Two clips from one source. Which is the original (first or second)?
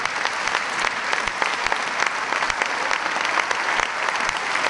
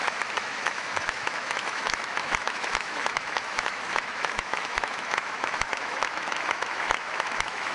first